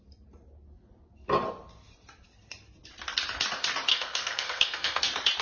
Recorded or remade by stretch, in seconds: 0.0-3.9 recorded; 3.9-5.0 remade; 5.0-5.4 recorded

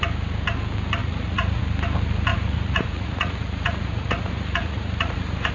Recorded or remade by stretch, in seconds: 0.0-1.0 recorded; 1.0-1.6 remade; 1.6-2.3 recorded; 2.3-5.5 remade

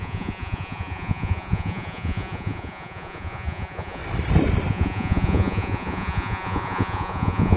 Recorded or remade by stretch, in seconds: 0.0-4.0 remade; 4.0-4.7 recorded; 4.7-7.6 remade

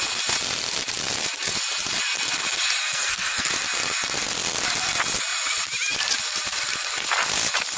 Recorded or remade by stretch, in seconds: 0.0-2.8 recorded; 2.8-3.5 remade; 3.5-7.8 recorded

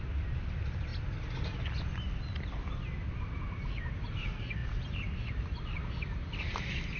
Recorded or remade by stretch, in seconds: 0.0-7.0 recorded